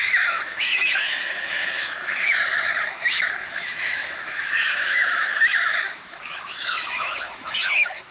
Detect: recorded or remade remade